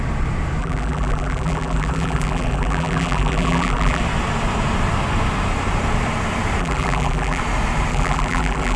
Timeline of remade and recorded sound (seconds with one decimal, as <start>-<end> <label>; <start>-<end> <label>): 0.0-0.6 recorded; 0.6-4.0 remade; 4.0-6.6 recorded; 6.6-7.4 remade; 7.4-7.9 recorded; 7.9-8.8 remade